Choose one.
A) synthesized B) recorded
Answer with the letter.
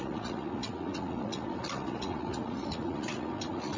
A